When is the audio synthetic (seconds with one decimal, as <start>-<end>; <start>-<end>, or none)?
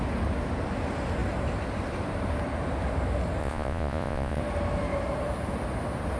3.4-4.4